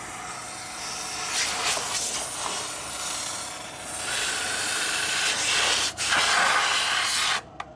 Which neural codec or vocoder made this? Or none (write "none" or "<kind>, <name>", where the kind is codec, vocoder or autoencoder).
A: none